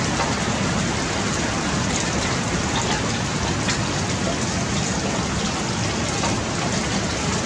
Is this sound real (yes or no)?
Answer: yes